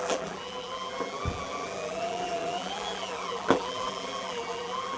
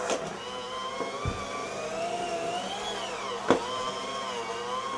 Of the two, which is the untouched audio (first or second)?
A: second